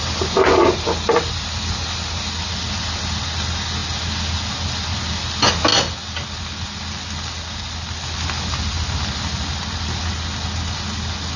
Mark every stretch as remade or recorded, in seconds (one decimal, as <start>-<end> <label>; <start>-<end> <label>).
0.0-11.4 recorded